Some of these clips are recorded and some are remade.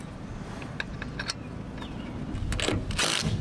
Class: recorded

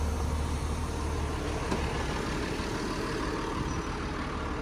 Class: recorded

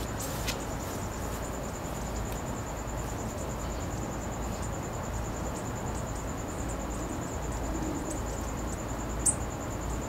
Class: recorded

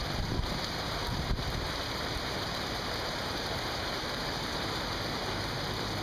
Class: remade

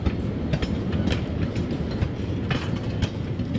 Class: recorded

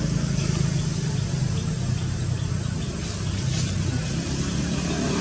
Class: recorded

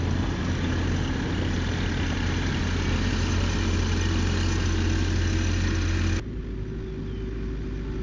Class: recorded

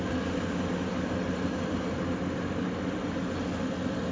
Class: recorded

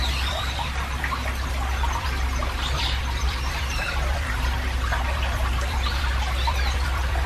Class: remade